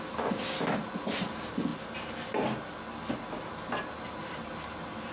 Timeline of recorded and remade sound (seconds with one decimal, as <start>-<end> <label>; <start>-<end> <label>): 0.0-5.1 recorded